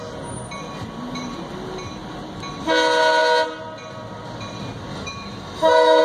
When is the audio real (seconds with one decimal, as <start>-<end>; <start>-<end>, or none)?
0.0-4.9